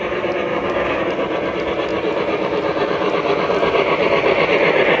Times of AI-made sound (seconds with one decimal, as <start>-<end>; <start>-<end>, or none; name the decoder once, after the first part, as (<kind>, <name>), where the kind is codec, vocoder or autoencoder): 0.5-1.0 (codec, DAC)